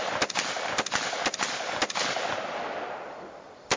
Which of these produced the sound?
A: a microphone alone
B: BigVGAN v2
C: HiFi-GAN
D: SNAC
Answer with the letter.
A